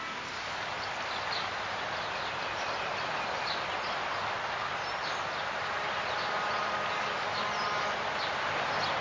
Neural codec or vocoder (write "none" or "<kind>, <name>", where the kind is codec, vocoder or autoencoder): none